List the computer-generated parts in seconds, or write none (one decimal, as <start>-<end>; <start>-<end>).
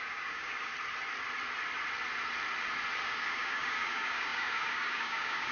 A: 0.0-0.7; 3.0-5.5